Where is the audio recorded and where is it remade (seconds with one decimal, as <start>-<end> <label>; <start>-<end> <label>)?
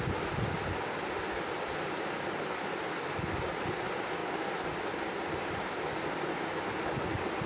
0.0-7.5 recorded